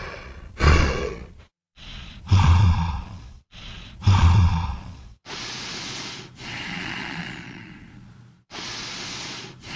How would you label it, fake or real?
fake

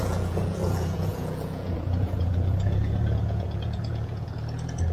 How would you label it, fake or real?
fake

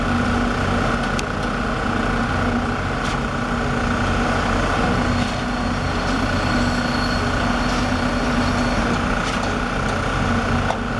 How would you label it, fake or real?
real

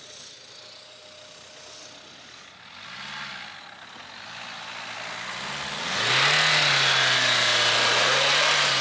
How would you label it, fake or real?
real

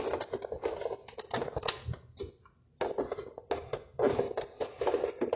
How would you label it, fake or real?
real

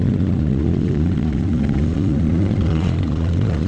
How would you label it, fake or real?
fake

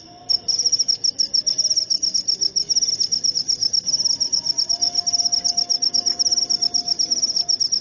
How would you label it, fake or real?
real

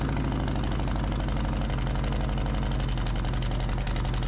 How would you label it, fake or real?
real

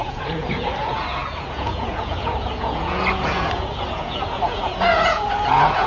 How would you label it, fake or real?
fake